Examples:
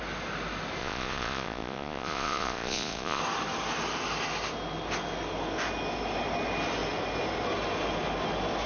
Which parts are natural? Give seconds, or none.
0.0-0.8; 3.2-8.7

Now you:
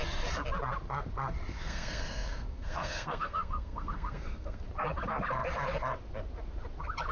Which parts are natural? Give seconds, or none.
0.0-1.5; 4.6-7.1

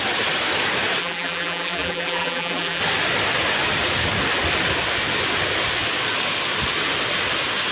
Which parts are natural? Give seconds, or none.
0.0-1.0; 2.8-7.7

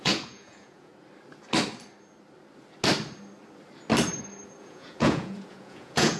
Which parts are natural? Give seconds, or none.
0.9-4.6

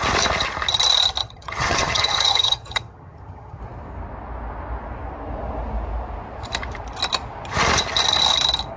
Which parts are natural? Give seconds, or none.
0.0-1.2; 3.6-8.8

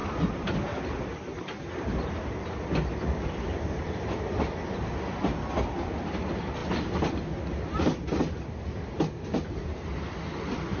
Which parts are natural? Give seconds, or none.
0.0-10.8